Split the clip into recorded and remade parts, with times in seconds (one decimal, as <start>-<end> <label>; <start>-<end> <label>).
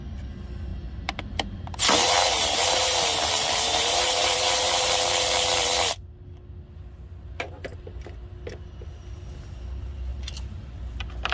0.0-0.7 recorded; 0.7-4.9 remade; 4.9-11.3 recorded